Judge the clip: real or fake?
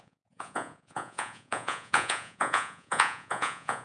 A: fake